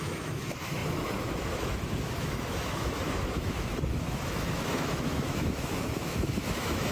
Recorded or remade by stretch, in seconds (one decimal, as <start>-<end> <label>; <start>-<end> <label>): 0.0-6.9 remade